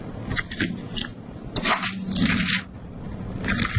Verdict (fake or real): real